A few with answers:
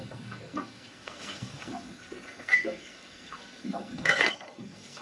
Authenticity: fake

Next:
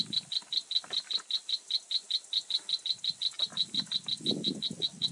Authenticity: real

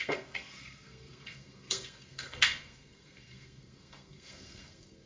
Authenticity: fake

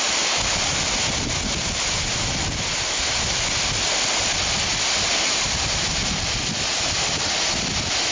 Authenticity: real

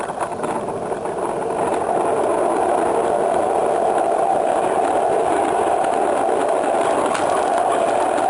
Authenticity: real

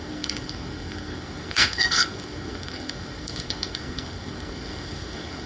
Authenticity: fake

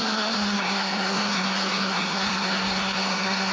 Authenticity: fake